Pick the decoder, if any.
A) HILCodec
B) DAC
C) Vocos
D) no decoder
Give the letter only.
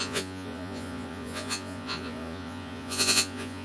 C